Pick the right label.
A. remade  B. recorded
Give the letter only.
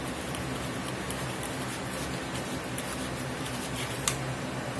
B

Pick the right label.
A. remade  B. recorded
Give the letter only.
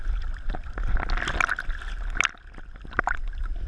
B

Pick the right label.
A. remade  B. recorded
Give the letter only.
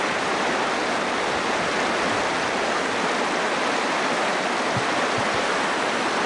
B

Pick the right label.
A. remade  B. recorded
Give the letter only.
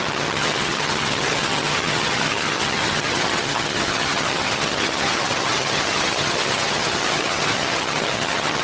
A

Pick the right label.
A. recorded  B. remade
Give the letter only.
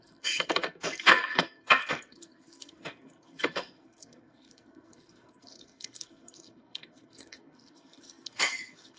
B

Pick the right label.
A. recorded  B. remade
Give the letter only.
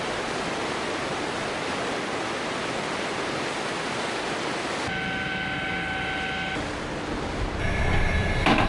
A